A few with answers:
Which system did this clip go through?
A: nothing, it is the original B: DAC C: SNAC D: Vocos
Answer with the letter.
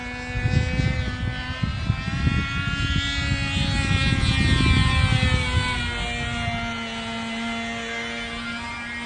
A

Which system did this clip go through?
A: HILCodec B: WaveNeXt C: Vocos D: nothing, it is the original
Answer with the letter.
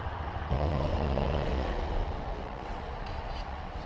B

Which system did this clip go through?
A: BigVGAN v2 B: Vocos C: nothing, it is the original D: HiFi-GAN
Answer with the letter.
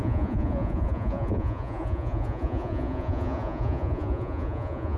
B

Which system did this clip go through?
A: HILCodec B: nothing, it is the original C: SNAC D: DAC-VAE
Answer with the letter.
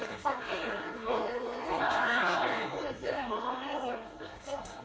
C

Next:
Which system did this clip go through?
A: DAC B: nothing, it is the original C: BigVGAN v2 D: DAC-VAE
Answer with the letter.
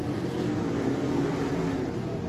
B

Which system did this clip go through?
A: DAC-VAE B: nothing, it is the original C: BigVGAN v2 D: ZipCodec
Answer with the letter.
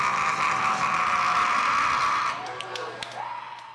B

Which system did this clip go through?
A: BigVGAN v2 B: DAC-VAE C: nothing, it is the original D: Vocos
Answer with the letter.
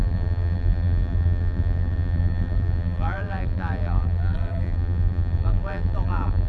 A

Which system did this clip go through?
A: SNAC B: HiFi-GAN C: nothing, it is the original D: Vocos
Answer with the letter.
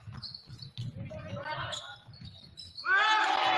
C